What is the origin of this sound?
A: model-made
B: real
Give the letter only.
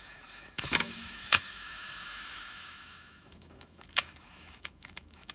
A